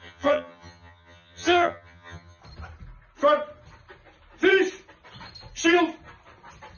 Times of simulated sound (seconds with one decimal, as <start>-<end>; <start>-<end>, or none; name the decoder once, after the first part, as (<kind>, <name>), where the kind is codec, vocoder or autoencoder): 0.0-2.4 (vocoder, HiFi-GAN)